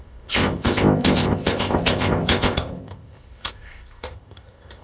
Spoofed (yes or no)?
yes